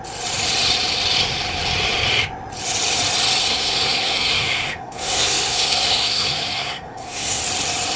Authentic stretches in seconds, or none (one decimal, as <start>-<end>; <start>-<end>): 0.0-3.4; 7.4-8.0